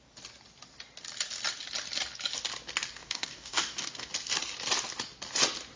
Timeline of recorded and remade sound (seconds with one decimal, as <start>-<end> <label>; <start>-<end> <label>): 0.0-3.0 recorded; 3.0-4.1 remade; 4.1-5.8 recorded